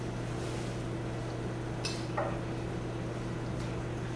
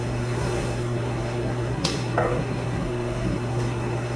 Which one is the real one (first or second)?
first